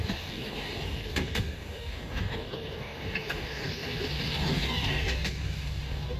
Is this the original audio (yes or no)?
no